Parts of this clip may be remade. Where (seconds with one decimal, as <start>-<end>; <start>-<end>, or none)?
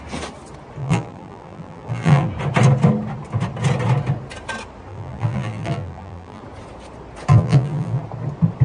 0.8-2.3; 4.9-6.4; 7.3-8.0